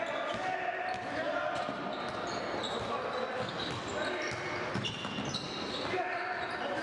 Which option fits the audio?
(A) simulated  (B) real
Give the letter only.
B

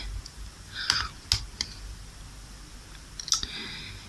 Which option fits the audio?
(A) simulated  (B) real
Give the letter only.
B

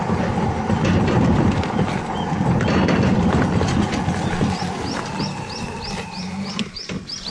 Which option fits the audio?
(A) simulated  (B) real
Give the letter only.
B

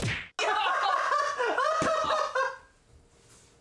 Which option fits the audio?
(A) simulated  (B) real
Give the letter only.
B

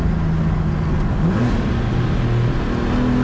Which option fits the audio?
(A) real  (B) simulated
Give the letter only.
A